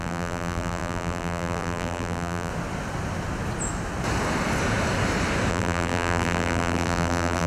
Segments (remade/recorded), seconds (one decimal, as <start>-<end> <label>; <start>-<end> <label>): 0.0-2.5 remade; 2.5-5.5 recorded; 5.5-7.5 remade